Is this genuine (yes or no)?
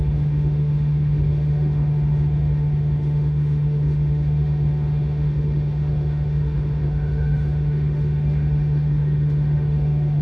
no